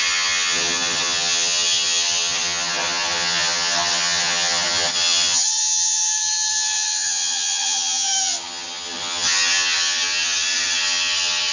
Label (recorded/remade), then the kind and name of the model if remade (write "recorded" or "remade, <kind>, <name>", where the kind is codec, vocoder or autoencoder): remade, vocoder, HiFi-GAN